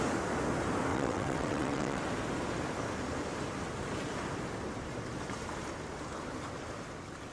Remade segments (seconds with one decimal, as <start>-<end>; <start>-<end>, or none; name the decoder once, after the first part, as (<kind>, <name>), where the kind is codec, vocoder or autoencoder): 0.9-2.0 (vocoder, WaveNeXt)